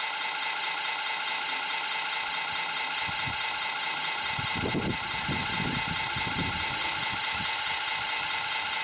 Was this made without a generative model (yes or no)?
yes